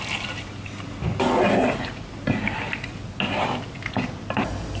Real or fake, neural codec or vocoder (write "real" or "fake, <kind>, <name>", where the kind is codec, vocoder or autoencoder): real